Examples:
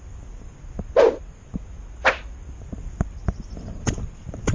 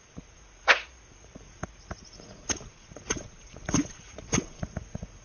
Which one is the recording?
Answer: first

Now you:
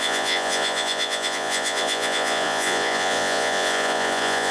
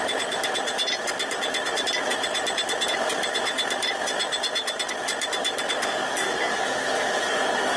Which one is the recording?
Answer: second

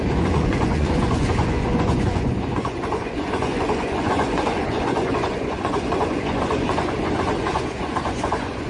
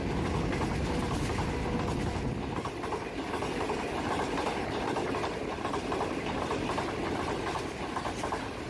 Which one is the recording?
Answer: second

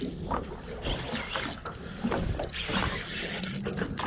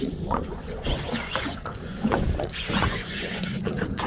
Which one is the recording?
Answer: first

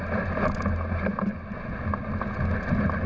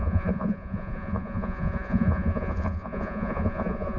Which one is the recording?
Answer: first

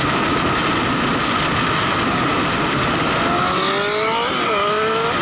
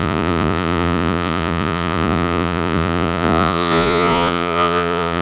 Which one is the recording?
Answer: first